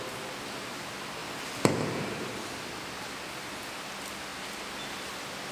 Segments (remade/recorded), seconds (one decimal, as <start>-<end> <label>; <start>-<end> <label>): 0.0-5.5 recorded